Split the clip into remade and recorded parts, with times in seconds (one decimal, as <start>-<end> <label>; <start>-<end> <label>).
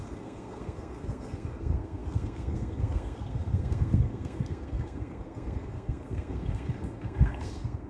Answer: 0.0-7.9 remade